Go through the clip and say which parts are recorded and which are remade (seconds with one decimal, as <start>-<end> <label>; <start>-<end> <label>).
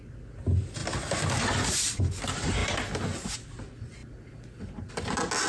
0.0-5.5 recorded